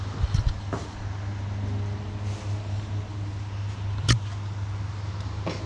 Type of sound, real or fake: real